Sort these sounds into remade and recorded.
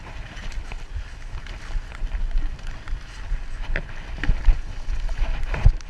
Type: recorded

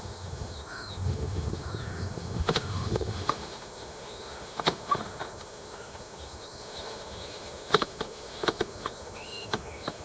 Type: remade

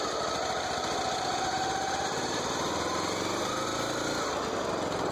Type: recorded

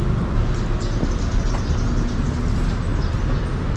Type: recorded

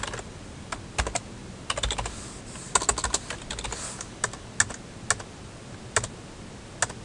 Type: recorded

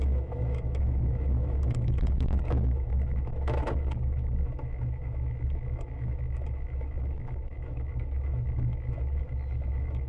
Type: remade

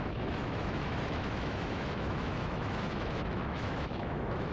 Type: remade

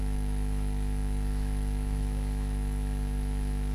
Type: remade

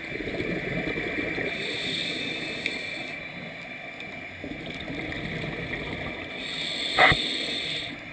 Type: recorded